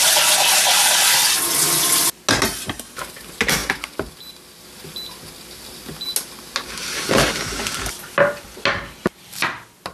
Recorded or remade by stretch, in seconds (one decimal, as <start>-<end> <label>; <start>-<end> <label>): 0.0-9.9 recorded